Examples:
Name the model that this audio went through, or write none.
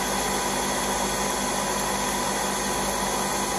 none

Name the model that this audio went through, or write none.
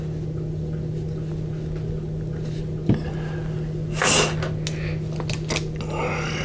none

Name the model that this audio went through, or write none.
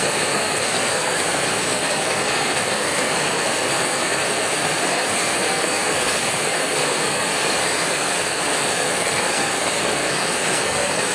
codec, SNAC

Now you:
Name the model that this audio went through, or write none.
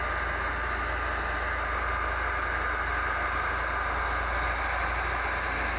none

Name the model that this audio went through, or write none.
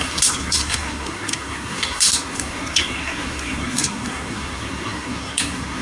codec, SNAC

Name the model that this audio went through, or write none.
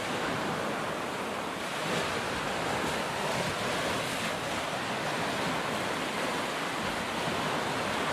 none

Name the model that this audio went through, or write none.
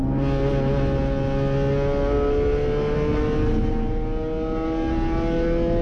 none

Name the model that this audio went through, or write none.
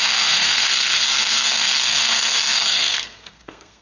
codec, SNAC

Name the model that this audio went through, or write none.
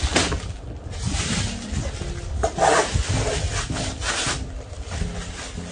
none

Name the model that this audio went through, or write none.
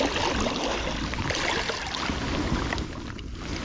none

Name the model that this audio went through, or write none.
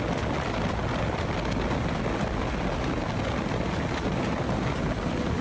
none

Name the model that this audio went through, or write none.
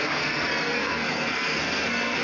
codec, SNAC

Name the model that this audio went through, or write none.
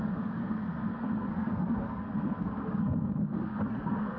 codec, SNAC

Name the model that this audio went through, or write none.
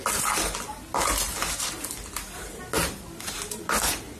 none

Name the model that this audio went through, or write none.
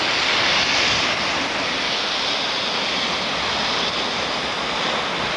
none